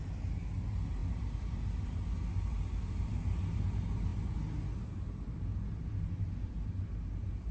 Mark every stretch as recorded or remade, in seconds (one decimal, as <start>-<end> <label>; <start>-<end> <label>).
0.0-7.5 recorded